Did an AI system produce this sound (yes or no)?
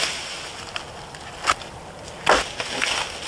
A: no